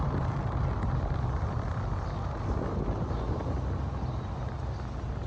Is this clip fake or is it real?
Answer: real